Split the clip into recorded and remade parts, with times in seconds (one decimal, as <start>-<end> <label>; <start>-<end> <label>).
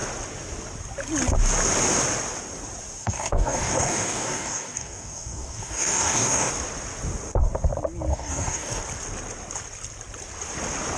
0.0-3.0 recorded; 3.0-6.5 remade; 6.5-8.1 recorded; 8.1-8.8 remade; 8.8-11.0 recorded